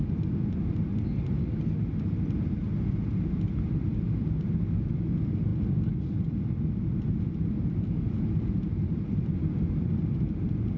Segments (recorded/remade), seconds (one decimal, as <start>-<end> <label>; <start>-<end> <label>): 0.0-10.8 recorded